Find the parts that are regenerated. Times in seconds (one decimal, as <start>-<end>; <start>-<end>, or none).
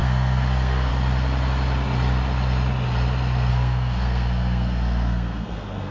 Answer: 0.0-0.9; 3.5-5.9